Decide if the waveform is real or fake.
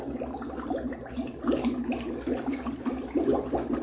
real